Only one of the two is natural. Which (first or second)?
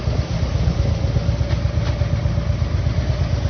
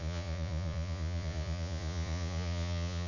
first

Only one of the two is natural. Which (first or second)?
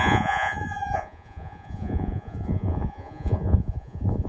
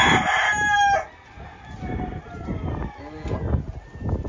second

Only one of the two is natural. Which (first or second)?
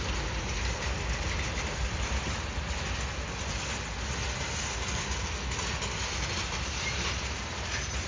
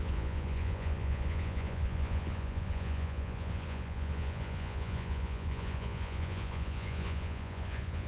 first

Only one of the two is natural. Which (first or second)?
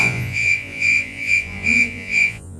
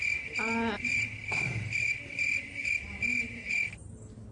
second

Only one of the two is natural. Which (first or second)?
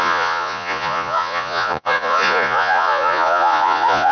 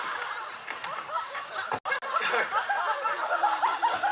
second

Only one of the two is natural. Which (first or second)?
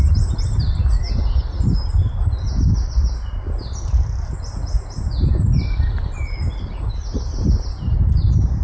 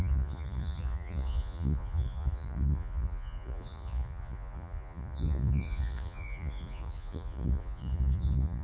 first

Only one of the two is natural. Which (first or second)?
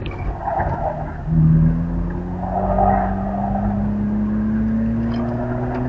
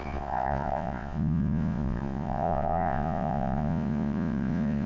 first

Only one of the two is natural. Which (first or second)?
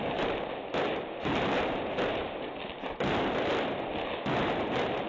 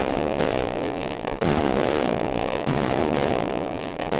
first